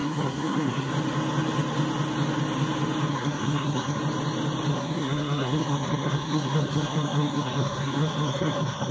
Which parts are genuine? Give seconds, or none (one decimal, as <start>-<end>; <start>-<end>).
0.9-3.1; 4.0-4.7